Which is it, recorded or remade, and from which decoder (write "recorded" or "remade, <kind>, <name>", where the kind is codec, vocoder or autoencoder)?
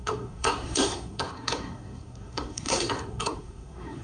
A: remade, codec, SNAC